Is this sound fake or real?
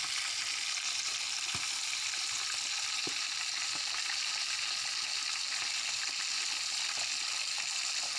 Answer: real